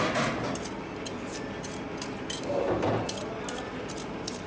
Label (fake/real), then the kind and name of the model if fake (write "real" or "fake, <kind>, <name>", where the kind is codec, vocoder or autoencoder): real